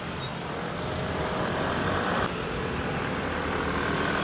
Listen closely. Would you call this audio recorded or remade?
recorded